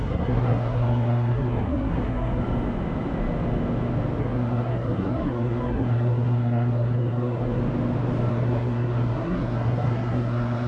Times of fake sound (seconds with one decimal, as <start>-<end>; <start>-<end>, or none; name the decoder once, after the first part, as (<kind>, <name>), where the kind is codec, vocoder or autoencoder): 0.0-2.4 (codec, SNAC); 4.2-7.6; 8.3-10.7